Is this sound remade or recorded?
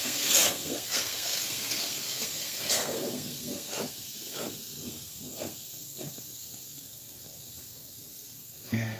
remade